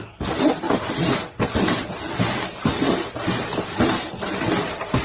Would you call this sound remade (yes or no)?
no